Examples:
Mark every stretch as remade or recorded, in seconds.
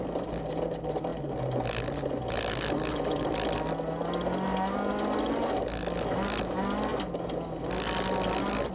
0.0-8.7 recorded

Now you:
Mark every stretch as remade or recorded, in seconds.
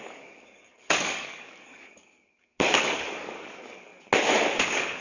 0.0-3.9 remade; 3.9-4.6 recorded; 4.6-5.0 remade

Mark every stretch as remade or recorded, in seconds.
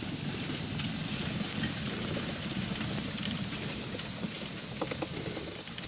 0.0-5.9 recorded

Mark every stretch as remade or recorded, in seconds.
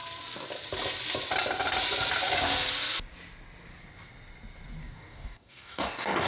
0.0-4.8 recorded; 4.8-6.3 remade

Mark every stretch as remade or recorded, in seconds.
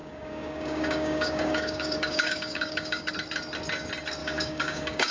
0.0-3.1 remade; 3.1-4.2 recorded; 4.2-5.1 remade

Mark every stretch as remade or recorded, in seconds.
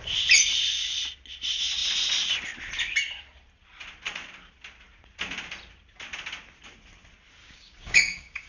0.0-7.4 recorded; 7.4-8.5 remade